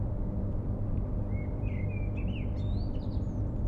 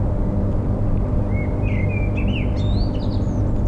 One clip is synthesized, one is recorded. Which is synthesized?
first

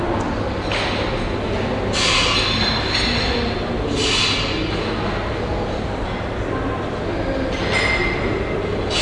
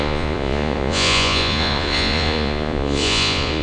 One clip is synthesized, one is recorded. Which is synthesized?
second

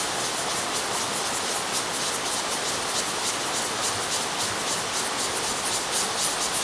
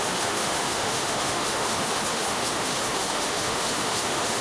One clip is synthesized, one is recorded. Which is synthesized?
second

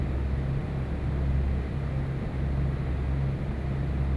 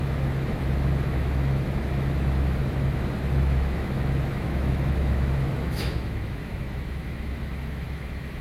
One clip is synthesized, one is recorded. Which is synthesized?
second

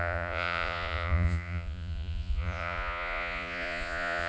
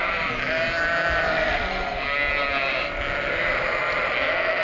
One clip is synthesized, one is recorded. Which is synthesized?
first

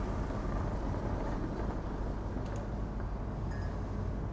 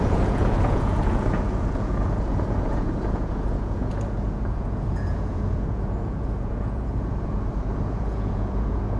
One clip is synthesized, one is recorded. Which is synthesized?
second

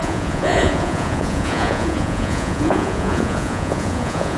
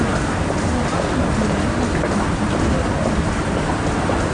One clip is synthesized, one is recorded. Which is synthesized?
first